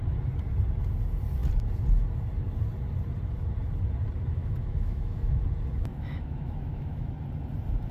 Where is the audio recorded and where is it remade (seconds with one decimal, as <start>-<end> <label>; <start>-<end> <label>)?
0.0-4.4 recorded; 4.4-5.4 remade; 5.4-5.9 recorded; 5.9-7.1 remade; 7.1-7.9 recorded